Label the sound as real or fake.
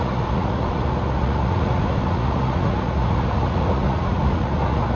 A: fake